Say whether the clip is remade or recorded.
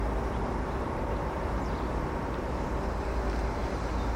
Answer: recorded